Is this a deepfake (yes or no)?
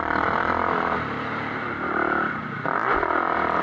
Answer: yes